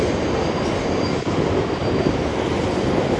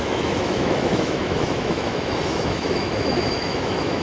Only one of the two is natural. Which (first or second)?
first